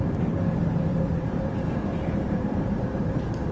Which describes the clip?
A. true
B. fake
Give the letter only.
B